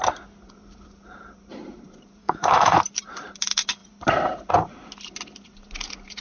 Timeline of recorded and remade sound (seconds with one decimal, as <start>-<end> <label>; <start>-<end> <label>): 0.0-2.2 recorded; 2.2-2.8 remade; 2.8-6.2 recorded